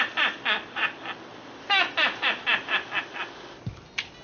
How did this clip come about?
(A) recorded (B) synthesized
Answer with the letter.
A